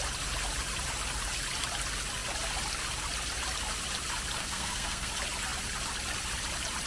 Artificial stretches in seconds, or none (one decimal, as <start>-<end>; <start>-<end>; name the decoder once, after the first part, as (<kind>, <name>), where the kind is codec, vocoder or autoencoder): 4.4-5.1 (codec, SNAC)

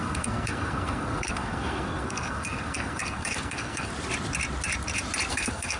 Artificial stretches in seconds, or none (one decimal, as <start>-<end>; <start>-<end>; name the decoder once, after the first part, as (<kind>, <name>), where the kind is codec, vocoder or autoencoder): 0.0-3.9 (codec, SNAC); 5.3-5.8

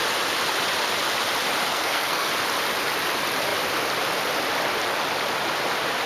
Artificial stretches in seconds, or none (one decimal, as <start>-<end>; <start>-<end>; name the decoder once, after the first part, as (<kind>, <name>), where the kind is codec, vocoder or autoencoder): 1.7-2.3 (codec, SNAC)

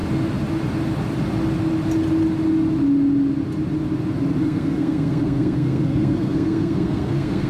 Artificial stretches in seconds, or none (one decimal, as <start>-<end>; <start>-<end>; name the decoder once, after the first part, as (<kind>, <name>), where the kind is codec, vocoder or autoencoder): 4.4-7.5 (codec, SNAC)

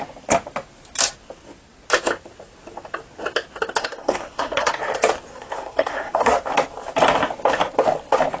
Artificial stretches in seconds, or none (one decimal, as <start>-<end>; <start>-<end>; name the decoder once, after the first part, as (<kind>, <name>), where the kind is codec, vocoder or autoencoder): 3.8-4.7 (codec, SNAC); 5.3-6.3